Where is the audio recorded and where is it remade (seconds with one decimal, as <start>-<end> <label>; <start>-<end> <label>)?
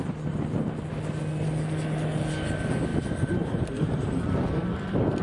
0.0-2.9 recorded; 2.9-5.2 remade